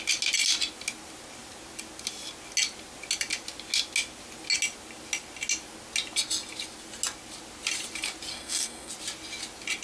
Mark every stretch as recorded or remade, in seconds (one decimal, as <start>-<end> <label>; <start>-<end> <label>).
0.0-8.3 recorded; 8.3-8.9 remade; 8.9-9.8 recorded